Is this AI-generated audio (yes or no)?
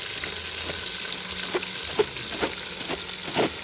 no